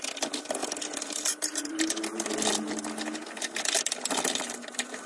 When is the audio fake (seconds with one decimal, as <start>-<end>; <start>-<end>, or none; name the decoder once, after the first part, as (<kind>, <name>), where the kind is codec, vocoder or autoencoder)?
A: none